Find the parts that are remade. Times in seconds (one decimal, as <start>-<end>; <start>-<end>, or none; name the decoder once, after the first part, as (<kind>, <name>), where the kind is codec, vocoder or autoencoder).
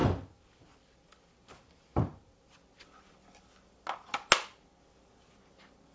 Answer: none